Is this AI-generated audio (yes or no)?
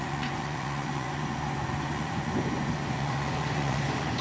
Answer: yes